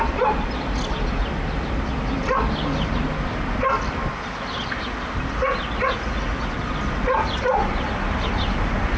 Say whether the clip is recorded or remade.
recorded